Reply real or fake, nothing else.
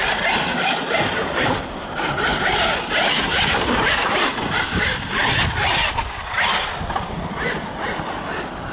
real